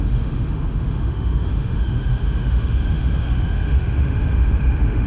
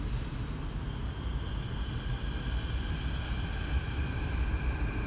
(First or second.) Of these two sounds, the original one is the second